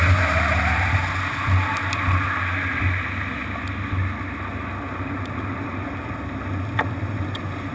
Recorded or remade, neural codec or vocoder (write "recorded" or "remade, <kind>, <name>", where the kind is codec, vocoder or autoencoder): recorded